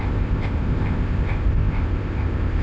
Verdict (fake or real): fake